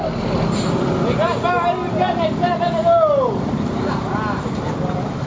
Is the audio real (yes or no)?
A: yes